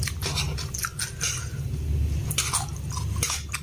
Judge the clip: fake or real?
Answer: real